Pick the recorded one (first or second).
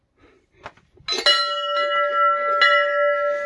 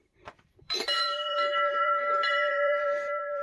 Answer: first